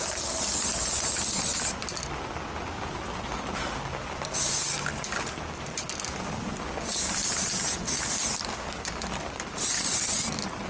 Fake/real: real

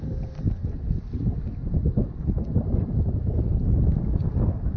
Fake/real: real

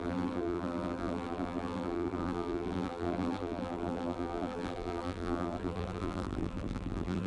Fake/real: fake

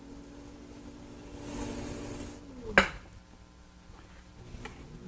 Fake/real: real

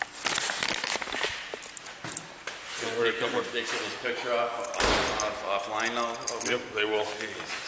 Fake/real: real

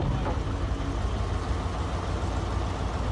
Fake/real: real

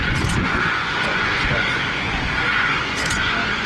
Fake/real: fake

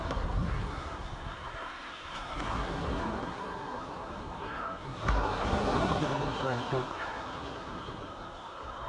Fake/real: fake